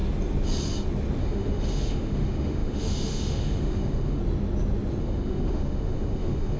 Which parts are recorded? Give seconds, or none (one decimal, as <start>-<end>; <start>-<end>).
0.0-1.2; 4.2-5.0